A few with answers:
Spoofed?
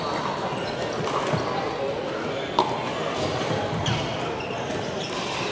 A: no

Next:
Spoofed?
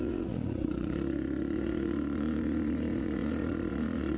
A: yes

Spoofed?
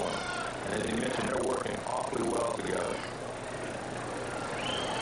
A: no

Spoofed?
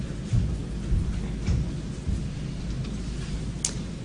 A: no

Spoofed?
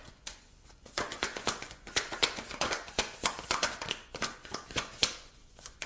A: yes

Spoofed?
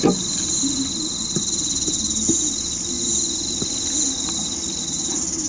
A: no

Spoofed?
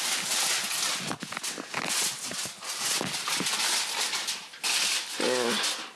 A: no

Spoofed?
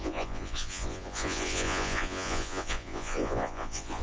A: yes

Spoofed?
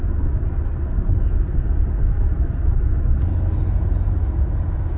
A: no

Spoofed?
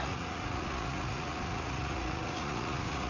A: yes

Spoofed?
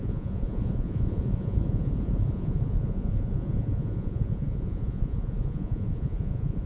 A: yes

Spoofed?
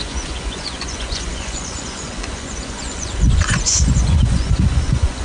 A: yes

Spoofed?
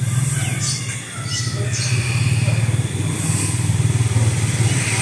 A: no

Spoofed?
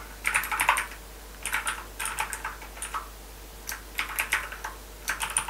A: no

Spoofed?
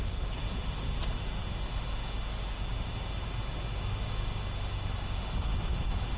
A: no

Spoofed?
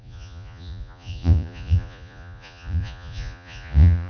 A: yes